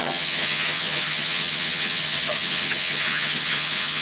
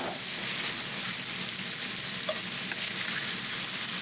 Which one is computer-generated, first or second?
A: first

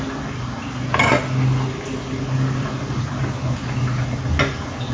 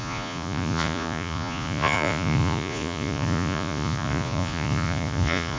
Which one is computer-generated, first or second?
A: second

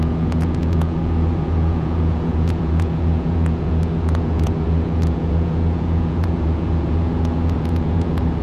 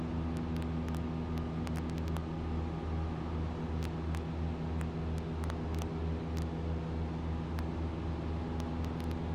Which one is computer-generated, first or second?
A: first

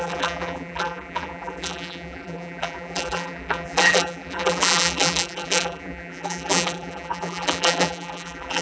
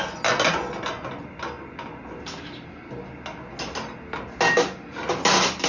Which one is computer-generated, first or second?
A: first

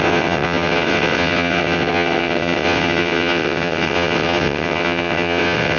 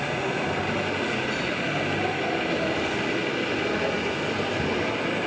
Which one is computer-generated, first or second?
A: first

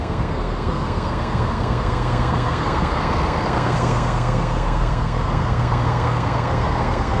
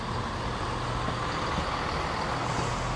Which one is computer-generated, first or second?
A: first